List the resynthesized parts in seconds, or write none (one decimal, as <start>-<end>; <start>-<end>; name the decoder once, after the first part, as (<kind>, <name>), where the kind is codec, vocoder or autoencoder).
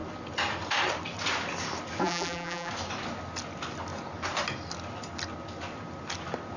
2.0-2.7 (vocoder, BigVGAN v2)